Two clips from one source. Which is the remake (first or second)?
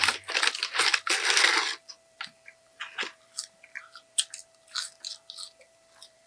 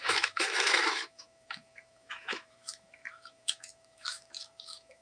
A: second